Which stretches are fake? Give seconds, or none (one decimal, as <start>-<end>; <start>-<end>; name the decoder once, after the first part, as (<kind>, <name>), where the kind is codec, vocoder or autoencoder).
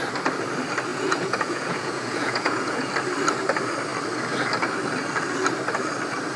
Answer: 0.9-2.9 (vocoder, Vocos)